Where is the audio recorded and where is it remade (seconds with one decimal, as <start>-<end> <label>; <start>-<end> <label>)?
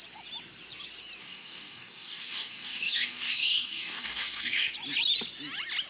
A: 0.0-1.2 recorded; 1.2-4.7 remade; 4.7-5.9 recorded